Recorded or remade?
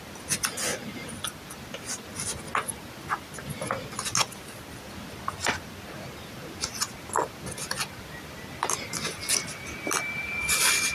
recorded